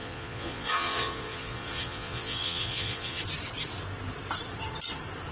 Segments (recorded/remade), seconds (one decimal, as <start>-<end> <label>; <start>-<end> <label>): 0.0-3.2 remade; 3.2-5.3 recorded

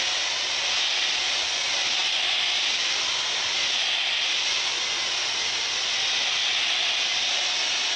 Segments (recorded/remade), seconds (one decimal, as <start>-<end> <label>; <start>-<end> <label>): 0.0-8.0 recorded